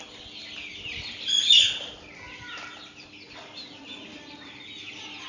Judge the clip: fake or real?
real